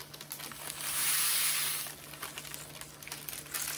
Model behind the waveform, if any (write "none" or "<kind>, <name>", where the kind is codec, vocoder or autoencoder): none